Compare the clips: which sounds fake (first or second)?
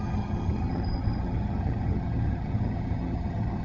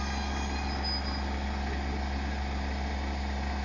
first